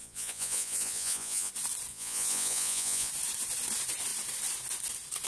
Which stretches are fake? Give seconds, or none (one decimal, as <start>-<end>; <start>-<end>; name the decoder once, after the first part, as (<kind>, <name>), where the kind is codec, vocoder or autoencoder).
0.0-1.5 (vocoder, Vocos); 1.9-3.1